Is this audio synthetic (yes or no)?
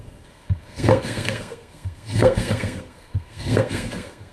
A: yes